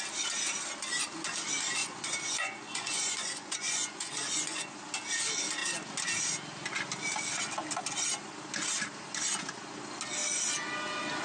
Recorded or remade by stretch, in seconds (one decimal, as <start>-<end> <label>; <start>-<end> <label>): 0.0-1.8 recorded; 1.8-4.8 remade; 4.8-11.2 recorded